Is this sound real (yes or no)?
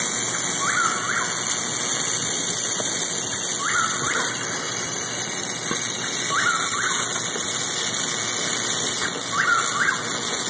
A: yes